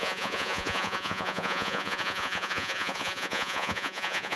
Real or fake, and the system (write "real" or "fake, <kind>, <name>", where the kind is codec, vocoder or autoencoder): fake, vocoder, Vocos